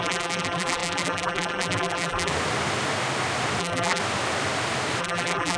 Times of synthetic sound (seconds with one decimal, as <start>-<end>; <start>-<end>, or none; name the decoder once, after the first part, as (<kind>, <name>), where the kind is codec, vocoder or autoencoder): 0.0-2.3 (vocoder, BigVGAN v2); 3.6-4.0; 5.0-5.6